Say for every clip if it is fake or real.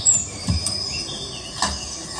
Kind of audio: real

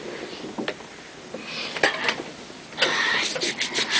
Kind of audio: real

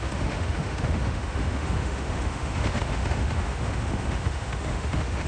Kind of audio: fake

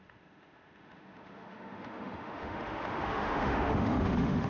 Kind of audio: fake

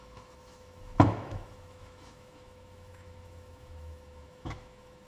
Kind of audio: fake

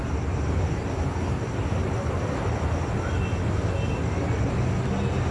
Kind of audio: real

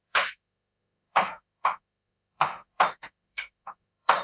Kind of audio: fake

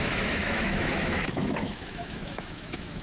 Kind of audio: fake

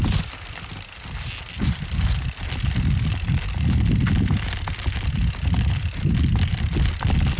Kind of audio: real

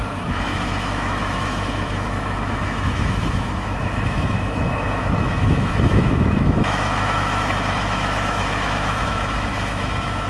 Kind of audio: fake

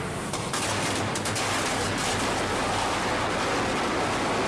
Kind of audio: real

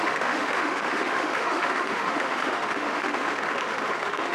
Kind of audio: fake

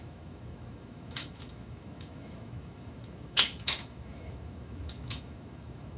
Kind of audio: fake